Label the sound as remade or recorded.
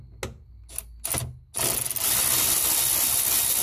recorded